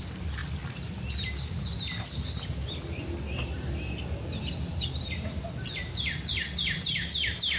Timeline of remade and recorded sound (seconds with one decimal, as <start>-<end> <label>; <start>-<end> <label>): 0.0-7.6 recorded